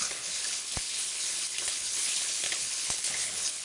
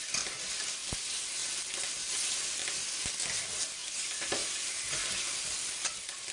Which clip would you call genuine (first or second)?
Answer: second